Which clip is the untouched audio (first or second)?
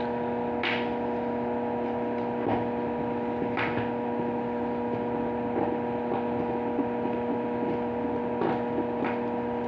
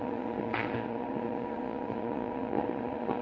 first